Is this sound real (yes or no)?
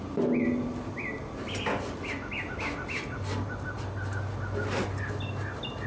yes